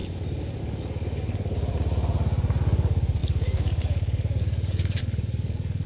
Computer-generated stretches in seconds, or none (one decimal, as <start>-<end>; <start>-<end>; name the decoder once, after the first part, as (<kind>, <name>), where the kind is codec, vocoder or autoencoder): 0.6-1.7 (codec, DAC); 2.6-5.9